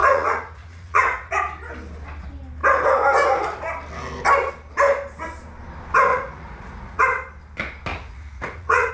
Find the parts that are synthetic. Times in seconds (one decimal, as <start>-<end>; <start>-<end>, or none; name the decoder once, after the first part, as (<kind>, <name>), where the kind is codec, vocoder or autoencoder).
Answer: 0.0-1.3 (vocoder, Vocos); 6.1-7.0; 7.9-8.9